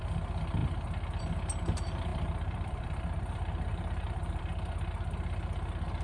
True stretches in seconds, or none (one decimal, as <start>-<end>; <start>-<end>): 0.0-2.1; 4.4-6.0